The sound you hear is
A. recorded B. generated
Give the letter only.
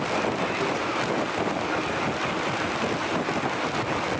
A